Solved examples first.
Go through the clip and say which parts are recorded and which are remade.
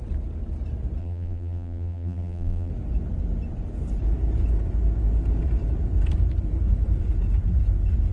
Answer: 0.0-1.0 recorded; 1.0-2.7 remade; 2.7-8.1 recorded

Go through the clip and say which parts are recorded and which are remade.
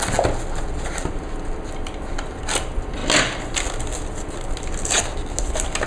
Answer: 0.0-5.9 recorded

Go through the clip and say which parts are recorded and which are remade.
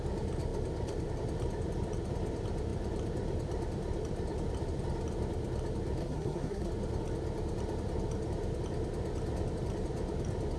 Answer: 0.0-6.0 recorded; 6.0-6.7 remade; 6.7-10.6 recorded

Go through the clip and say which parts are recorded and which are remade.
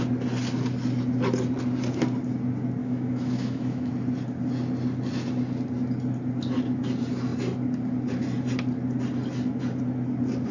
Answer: 0.0-2.8 recorded; 2.8-3.9 remade; 3.9-10.5 recorded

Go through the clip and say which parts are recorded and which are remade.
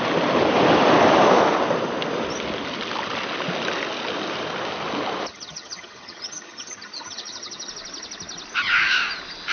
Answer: 0.0-5.3 recorded; 5.3-7.7 remade; 7.7-9.5 recorded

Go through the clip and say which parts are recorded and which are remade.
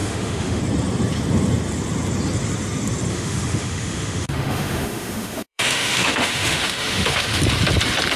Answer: 0.0-0.6 remade; 0.6-3.1 recorded; 3.1-7.4 remade; 7.4-8.2 recorded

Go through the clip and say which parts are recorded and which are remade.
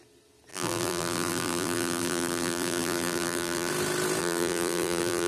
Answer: 0.0-0.5 recorded; 0.5-3.7 remade; 3.7-4.2 recorded; 4.2-5.3 remade